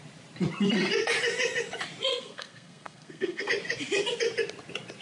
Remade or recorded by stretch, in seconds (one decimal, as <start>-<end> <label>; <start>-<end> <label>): 0.0-2.1 recorded; 2.1-3.5 remade; 3.5-5.0 recorded